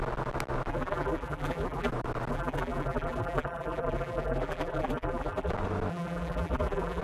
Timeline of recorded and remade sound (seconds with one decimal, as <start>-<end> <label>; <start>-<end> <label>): 0.0-0.7 recorded; 0.7-1.9 remade; 1.9-2.3 recorded; 2.3-5.5 remade; 5.5-5.9 recorded; 5.9-7.0 remade